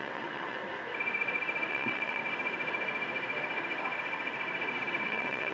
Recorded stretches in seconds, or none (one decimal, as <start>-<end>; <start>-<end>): 0.6-1.7; 2.2-5.0

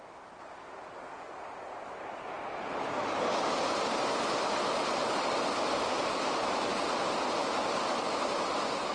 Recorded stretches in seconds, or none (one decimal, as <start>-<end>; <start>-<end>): 0.0-8.9

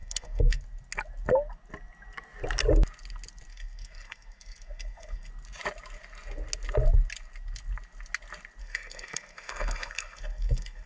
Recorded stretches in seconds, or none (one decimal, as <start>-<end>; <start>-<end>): 0.6-3.5; 5.3-8.6

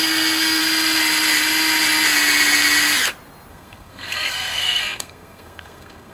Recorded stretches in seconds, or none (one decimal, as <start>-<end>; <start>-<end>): 0.6-3.5

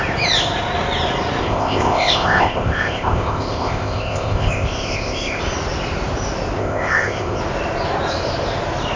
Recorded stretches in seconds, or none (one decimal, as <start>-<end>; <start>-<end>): 0.0-1.4; 5.4-6.6; 7.4-9.0

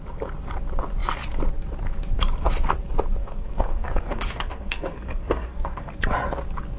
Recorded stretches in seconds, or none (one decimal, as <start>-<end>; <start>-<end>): 0.0-3.2; 5.9-6.8

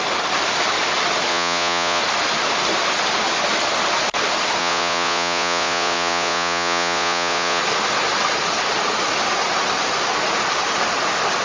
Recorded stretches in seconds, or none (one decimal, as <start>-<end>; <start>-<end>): 0.0-1.3; 2.0-4.6; 7.6-11.4

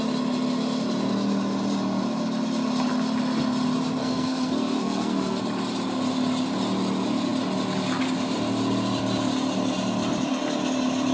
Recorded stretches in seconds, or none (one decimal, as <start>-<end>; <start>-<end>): 0.0-4.0; 5.4-11.1